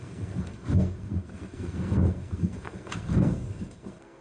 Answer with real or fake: fake